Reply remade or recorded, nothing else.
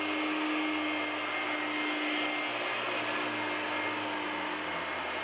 recorded